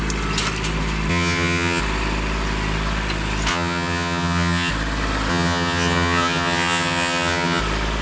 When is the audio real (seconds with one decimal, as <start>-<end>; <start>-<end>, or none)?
0.0-1.1; 1.8-3.5; 4.7-5.3; 7.6-8.0

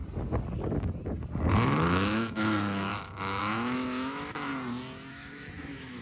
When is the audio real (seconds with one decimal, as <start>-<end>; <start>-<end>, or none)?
0.0-1.5; 4.5-5.1

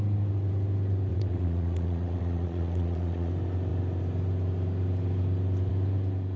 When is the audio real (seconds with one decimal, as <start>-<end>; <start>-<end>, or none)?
0.0-1.1; 3.3-6.4